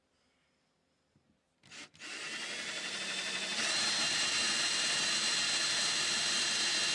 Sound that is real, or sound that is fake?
real